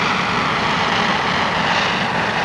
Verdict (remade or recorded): recorded